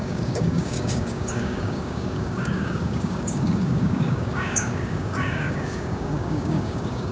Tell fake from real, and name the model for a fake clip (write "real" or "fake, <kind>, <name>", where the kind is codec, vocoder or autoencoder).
fake, codec, DAC